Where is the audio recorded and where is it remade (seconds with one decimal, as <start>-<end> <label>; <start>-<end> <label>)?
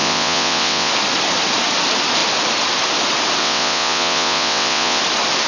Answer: 0.0-0.9 remade; 0.9-3.4 recorded; 3.4-5.0 remade; 5.0-5.5 recorded